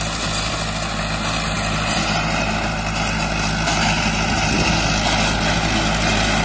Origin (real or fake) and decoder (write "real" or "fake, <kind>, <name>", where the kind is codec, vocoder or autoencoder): real